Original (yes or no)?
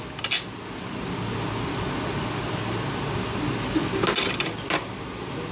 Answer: yes